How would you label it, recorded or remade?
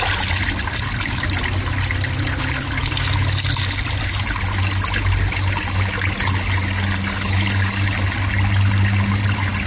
recorded